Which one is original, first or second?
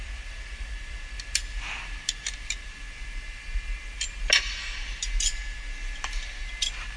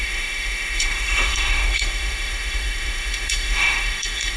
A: first